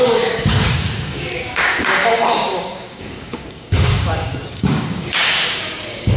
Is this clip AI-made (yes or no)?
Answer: yes